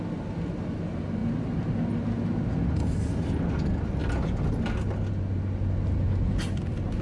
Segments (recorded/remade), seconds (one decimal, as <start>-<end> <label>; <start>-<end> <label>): 0.0-7.0 recorded